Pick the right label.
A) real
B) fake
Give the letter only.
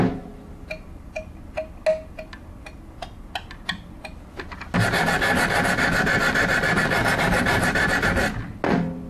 A